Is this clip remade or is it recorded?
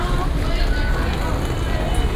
recorded